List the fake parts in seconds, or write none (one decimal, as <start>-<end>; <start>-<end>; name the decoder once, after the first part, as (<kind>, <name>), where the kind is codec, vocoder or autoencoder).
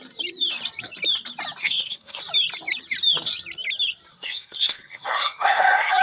1.6-2.2 (codec, SNAC); 4.1-6.0